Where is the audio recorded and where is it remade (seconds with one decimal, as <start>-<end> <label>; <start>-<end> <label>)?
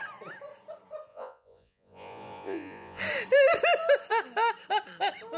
0.0-1.1 recorded; 1.1-3.0 remade; 3.0-5.4 recorded